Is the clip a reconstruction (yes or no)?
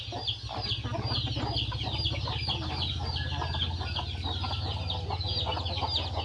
no